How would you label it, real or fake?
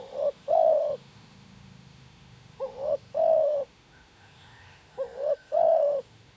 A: fake